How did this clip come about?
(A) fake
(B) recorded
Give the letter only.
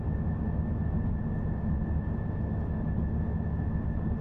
B